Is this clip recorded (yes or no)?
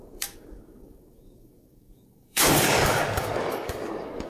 no